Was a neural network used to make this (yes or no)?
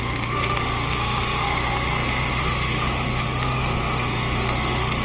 yes